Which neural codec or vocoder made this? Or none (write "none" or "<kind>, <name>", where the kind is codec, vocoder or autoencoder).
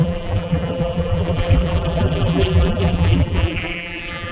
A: vocoder, BigVGAN v2